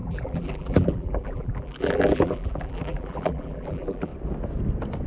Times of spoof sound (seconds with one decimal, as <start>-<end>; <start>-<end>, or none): 0.0-4.1